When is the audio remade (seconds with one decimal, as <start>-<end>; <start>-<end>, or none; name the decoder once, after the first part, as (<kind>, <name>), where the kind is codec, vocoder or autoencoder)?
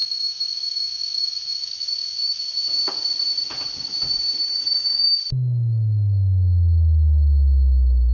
0.0-2.4 (autoencoder, DAC-VAE); 4.4-5.2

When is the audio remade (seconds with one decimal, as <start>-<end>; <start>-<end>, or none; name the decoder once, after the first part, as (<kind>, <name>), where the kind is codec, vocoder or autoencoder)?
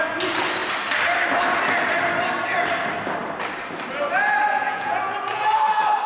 4.5-5.0 (vocoder, Vocos)